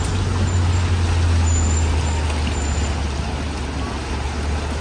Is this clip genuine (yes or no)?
yes